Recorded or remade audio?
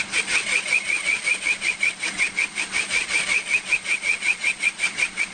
remade